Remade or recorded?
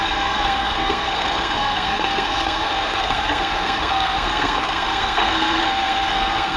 remade